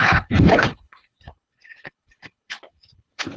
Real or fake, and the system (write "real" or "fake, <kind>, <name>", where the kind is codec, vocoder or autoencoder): fake, codec, HILCodec